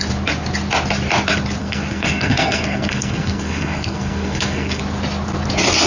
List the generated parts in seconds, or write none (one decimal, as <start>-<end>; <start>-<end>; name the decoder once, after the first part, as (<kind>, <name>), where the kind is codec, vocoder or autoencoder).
1.6-4.8 (codec, SNAC)